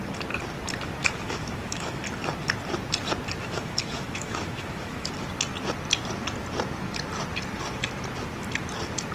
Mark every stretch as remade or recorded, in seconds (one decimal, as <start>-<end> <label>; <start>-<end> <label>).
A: 0.0-1.0 recorded; 1.0-2.0 remade; 2.0-3.4 recorded; 3.4-5.1 remade; 5.1-9.1 recorded